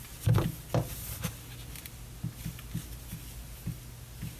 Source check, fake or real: real